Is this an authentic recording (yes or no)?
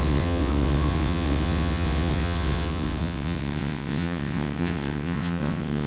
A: no